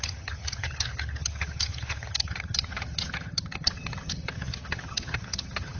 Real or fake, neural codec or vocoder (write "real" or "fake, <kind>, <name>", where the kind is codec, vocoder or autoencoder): fake, vocoder, HiFi-GAN